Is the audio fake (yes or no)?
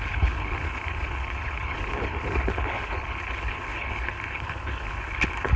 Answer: yes